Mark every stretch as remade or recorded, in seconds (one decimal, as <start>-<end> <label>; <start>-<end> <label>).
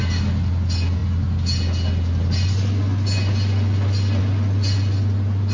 0.0-5.5 recorded